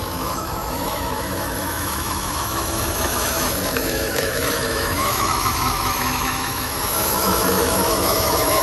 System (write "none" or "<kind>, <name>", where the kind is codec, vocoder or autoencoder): autoencoder, DAC-VAE